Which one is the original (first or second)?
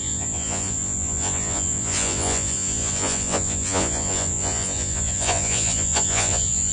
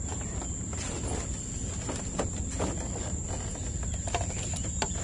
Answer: second